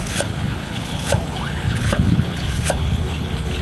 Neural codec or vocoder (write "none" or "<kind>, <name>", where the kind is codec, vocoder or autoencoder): codec, HILCodec